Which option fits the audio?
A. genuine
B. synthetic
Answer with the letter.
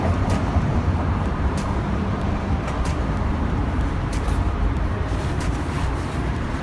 B